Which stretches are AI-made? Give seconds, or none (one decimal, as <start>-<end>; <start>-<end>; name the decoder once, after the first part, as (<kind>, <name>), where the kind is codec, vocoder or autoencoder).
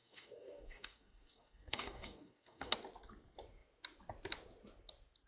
0.0-2.7 (codec, DAC)